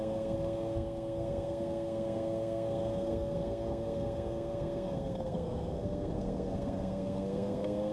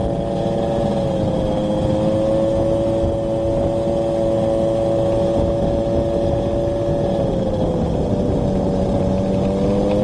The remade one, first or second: first